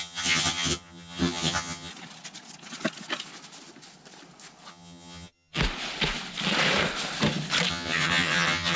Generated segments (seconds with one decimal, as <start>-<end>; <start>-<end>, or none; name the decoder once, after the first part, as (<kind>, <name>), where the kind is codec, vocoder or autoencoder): 0.0-1.9 (vocoder, HiFi-GAN); 4.7-5.6; 7.7-8.8